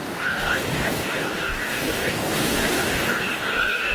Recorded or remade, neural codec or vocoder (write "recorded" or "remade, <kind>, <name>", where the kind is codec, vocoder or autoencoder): remade, codec, DAC